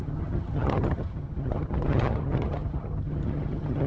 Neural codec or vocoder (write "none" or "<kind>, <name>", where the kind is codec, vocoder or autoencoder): vocoder, HiFi-GAN